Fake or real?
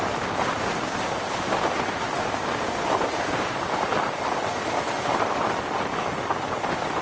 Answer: real